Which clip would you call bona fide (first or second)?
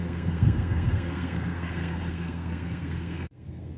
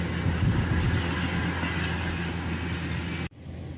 second